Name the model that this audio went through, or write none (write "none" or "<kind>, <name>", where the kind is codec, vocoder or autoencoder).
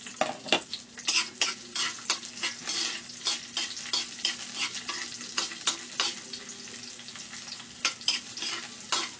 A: none